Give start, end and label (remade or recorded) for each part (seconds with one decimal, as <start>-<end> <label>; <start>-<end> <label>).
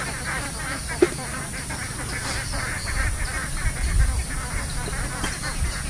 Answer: 0.0-5.9 recorded